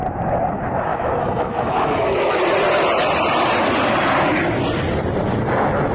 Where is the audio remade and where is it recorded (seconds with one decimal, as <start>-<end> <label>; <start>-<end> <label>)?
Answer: 0.0-0.9 recorded; 0.9-2.4 remade; 2.4-5.9 recorded

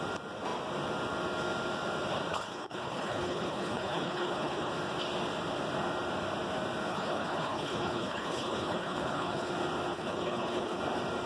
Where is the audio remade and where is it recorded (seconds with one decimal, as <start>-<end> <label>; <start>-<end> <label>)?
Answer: 0.0-2.3 recorded; 2.3-4.7 remade; 4.7-6.9 recorded; 6.9-9.5 remade; 9.5-9.9 recorded; 9.9-10.8 remade; 10.8-11.3 recorded

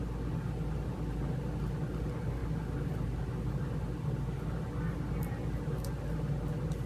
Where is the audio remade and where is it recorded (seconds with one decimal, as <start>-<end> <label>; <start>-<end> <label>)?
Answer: 0.0-6.9 recorded

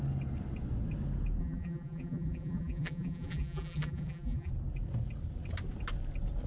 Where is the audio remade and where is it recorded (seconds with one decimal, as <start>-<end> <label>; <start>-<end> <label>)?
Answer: 0.0-1.4 recorded; 1.4-4.5 remade; 4.5-6.5 recorded

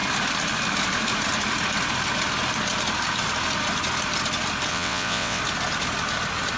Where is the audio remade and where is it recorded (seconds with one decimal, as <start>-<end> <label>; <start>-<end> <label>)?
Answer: 0.0-4.7 recorded; 4.7-5.4 remade; 5.4-6.6 recorded